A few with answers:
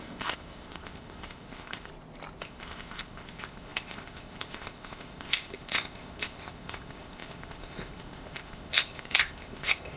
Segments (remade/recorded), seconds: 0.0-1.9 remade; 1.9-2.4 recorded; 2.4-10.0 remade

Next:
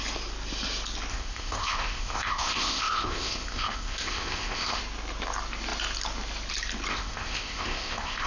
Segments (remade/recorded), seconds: 0.0-1.1 recorded; 1.1-4.8 remade; 4.8-6.9 recorded; 6.9-8.3 remade